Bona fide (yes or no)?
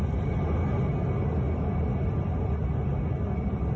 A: yes